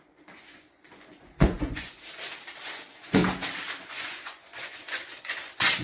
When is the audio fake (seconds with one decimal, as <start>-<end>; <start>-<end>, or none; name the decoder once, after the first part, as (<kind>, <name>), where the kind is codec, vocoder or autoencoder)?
0.0-1.9 (vocoder, Vocos); 2.6-3.2; 3.8-5.8